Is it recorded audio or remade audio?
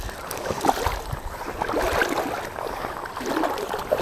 recorded